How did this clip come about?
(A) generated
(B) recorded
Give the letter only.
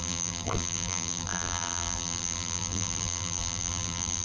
A